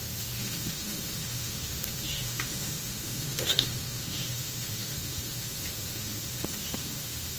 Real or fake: fake